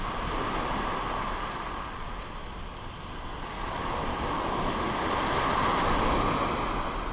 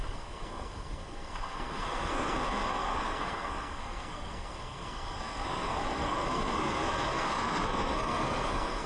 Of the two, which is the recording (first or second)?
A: first